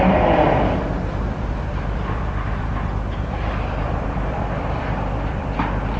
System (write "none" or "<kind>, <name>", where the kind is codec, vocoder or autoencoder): vocoder, BigVGAN v2